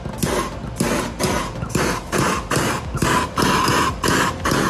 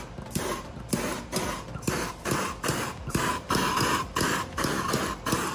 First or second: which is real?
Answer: first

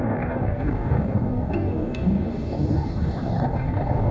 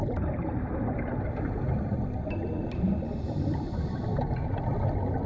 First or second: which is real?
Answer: second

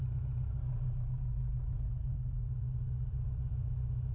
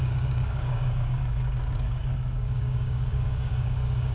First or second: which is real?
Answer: first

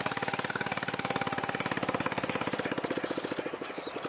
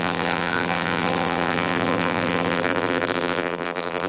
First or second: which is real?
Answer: first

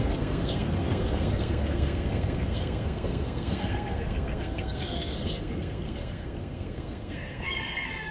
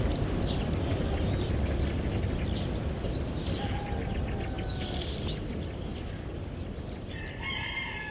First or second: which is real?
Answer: second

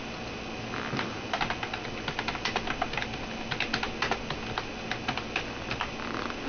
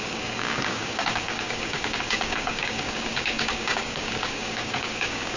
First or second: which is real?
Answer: first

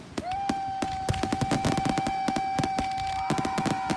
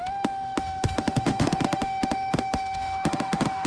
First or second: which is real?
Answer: first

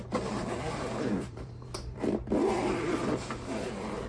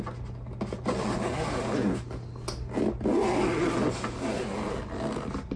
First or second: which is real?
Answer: second